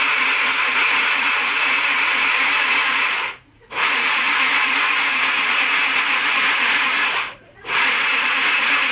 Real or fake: fake